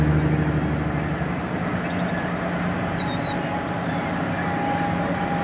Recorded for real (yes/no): yes